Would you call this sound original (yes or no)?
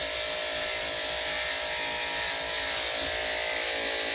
yes